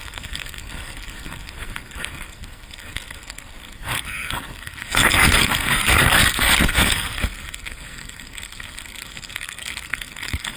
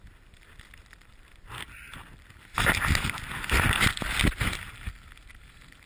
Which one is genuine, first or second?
second